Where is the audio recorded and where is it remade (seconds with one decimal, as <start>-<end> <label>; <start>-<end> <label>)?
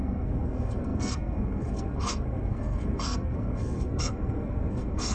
0.0-5.1 remade